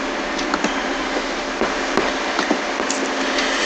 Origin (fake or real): real